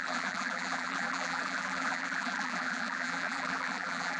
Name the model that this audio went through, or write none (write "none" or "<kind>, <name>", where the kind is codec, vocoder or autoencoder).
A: vocoder, BigVGAN v2